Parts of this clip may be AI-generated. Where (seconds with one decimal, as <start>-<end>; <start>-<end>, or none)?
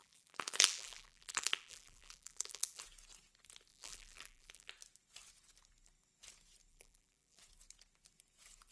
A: 0.0-2.8; 3.7-4.7; 6.7-7.4